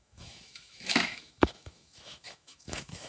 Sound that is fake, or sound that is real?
fake